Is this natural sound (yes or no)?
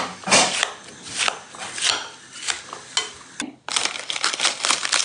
yes